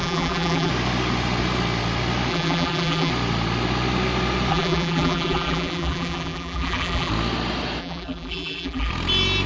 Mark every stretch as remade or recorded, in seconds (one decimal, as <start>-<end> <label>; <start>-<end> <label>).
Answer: 0.0-0.7 remade; 0.7-2.3 recorded; 2.3-3.1 remade; 3.1-4.5 recorded; 4.5-7.1 remade; 7.1-7.8 recorded; 7.8-8.9 remade; 8.9-9.5 recorded